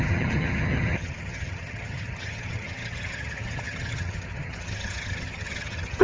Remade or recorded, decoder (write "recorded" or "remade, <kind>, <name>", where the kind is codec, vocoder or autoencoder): remade, vocoder, HiFi-GAN